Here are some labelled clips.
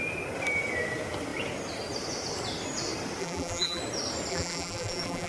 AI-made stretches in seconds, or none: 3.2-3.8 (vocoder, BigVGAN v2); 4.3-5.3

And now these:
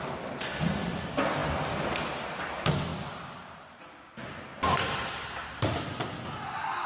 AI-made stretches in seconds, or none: 2.9-3.6 (vocoder, BigVGAN v2); 4.5-5.8

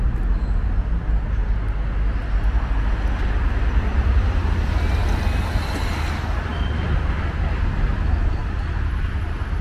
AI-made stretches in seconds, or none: 3.9-5.2 (vocoder, BigVGAN v2); 6.5-7.6